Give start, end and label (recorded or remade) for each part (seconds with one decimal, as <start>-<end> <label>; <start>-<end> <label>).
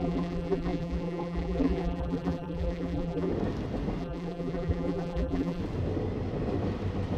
0.0-3.3 remade; 3.3-4.0 recorded; 4.0-5.6 remade; 5.6-7.2 recorded